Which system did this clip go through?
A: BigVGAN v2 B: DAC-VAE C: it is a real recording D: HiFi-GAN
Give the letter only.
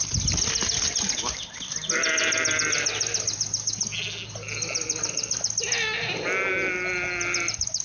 C